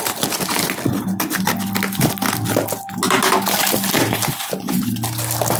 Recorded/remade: recorded